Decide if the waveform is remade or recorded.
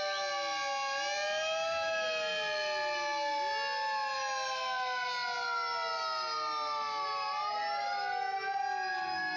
recorded